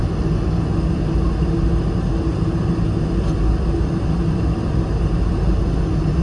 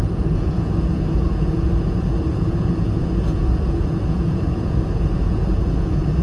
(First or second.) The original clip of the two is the first